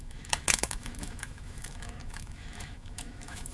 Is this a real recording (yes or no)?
no